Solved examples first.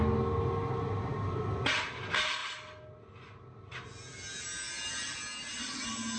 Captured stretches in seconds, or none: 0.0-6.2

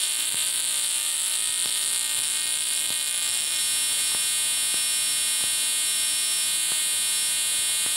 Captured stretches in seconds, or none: 3.6-8.0